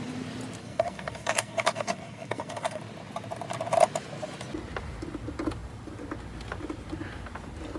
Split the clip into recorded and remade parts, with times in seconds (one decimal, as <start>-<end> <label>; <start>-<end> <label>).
0.0-0.6 recorded; 0.6-2.8 remade; 2.8-7.8 recorded